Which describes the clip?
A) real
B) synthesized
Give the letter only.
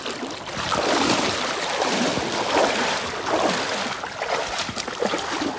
A